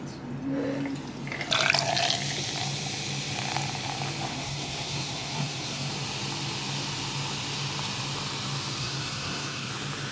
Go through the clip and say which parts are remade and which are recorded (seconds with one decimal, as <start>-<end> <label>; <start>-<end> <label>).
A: 0.0-4.3 recorded; 4.3-5.9 remade; 5.9-8.8 recorded; 8.8-9.7 remade; 9.7-10.1 recorded